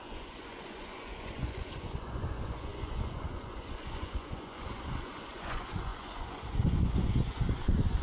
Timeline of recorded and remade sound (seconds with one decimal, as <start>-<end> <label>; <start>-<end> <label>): 0.0-8.0 remade